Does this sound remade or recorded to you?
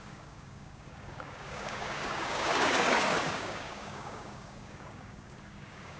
remade